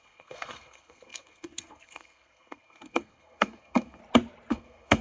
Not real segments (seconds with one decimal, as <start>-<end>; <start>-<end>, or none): 0.0-4.0; 4.5-5.0

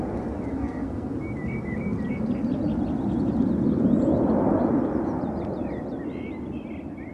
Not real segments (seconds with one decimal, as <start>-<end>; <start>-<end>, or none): 0.5-1.1

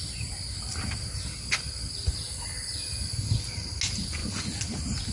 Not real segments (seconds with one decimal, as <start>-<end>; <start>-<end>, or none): none

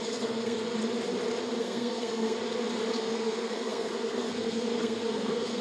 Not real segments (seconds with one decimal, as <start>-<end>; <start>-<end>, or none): 0.0-0.8; 1.6-2.4; 3.0-5.6

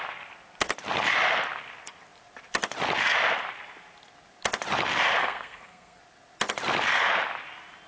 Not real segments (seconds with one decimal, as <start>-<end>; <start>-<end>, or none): 5.2-6.0

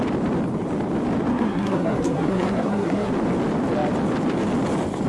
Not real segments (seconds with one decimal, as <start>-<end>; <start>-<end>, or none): 1.3-3.1